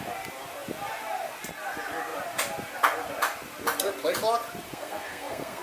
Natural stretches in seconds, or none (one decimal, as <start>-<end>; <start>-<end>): 0.0-4.6